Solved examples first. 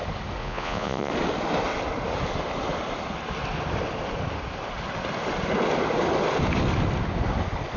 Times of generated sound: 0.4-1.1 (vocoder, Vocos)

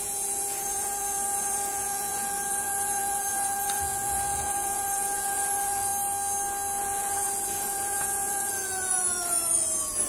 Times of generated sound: 0.0-5.9 (vocoder, Vocos); 6.8-10.1

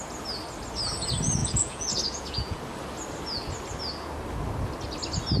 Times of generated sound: 1.4-2.6 (vocoder, Vocos)

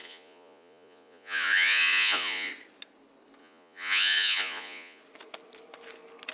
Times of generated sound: 0.0-2.5 (vocoder, Vocos); 3.4-5.0

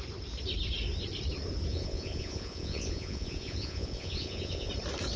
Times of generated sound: 1.7-4.7 (vocoder, Vocos)

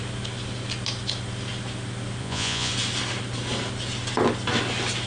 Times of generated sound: 2.2-2.7 (vocoder, Vocos)

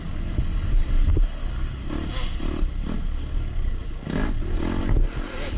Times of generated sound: none

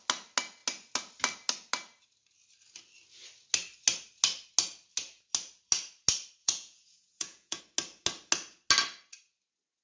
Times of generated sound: 6.4-7.6 (vocoder, Vocos)